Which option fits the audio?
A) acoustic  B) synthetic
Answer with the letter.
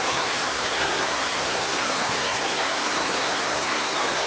B